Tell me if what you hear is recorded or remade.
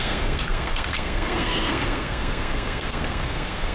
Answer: remade